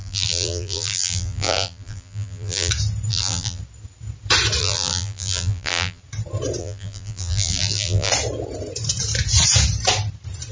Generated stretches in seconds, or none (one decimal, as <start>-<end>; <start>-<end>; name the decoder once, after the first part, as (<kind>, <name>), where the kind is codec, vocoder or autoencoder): 0.0-2.7 (vocoder, BigVGAN v2); 3.1-3.6; 4.6-6.0; 6.6-8.1